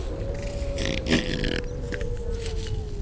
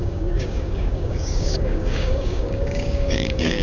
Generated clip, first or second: second